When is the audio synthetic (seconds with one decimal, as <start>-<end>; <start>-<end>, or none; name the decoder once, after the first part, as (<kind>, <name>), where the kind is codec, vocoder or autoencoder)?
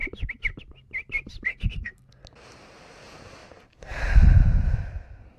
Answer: 1.5-2.1 (codec, SNAC)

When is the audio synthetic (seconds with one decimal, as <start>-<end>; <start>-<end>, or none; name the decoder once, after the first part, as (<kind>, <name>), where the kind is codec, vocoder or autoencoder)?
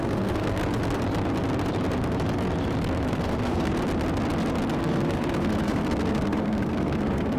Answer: 0.0-0.6 (codec, SNAC); 3.1-3.7; 4.8-7.4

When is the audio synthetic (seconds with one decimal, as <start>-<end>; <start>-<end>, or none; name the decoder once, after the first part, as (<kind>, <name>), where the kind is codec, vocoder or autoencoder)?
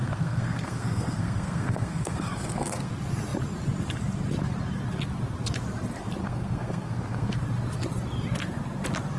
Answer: 0.0-2.9 (codec, SNAC); 6.2-7.4